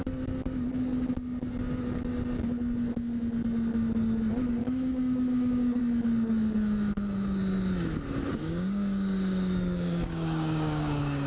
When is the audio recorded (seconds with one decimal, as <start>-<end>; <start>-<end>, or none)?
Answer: 0.0-4.6; 5.8-8.3

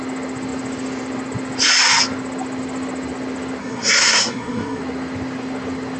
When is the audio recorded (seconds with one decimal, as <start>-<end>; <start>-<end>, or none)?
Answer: 0.0-3.6; 4.8-6.0

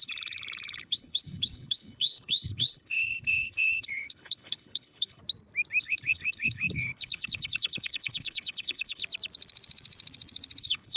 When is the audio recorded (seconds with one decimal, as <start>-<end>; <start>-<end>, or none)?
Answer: 5.2-5.8; 9.0-10.6

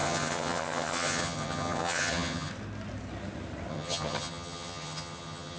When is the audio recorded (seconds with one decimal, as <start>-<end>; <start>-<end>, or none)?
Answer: 2.5-3.7